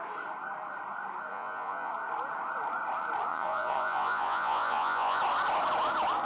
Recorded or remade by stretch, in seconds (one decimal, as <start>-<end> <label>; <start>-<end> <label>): 0.0-1.3 recorded; 1.3-1.9 remade; 1.9-3.3 recorded; 3.3-5.2 remade; 5.2-6.3 recorded